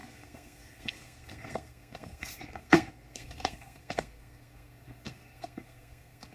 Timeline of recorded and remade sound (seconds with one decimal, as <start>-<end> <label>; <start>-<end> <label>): 0.0-6.3 remade